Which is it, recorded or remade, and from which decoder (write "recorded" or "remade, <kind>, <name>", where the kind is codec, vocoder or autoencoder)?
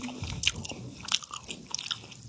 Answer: recorded